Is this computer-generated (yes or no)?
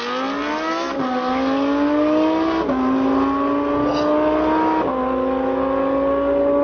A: no